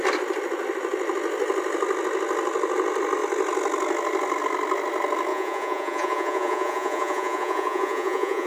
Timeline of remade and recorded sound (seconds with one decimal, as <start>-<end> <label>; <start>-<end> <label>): 0.0-5.3 recorded; 5.3-8.5 remade